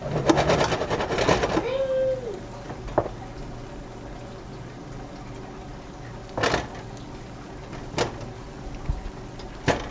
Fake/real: real